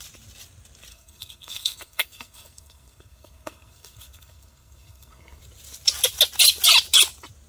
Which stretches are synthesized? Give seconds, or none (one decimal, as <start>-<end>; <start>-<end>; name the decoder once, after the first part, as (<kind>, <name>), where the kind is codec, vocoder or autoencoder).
0.9-5.4 (codec, SNAC)